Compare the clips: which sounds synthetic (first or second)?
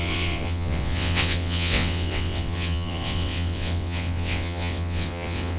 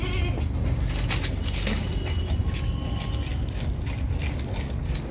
first